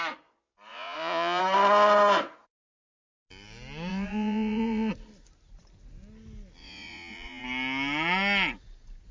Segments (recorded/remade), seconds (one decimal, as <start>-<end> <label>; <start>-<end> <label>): 0.0-0.7 recorded; 0.7-1.4 remade; 1.4-3.9 recorded; 3.9-4.9 remade; 4.9-6.6 recorded; 6.6-7.4 remade; 7.4-9.1 recorded